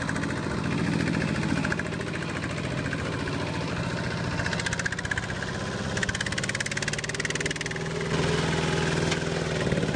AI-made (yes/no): no